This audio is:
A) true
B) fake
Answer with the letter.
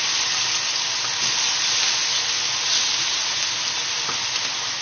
A